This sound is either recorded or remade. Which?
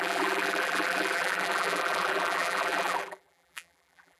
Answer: remade